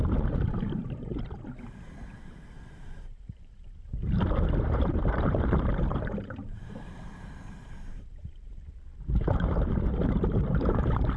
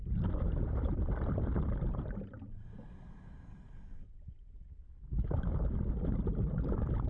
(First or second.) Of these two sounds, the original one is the second